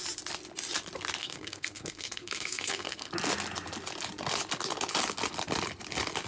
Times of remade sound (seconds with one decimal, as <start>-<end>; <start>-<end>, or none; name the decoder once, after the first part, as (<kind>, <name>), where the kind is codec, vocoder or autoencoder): 1.2-3.1 (codec, SNAC)